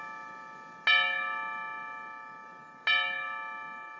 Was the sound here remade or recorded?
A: recorded